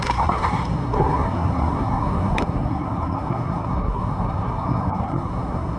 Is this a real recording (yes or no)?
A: no